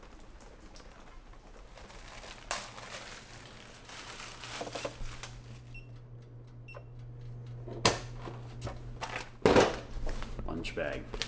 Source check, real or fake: real